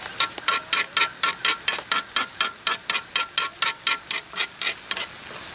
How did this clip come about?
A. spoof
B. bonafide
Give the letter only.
B